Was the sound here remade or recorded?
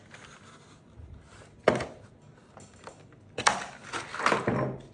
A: recorded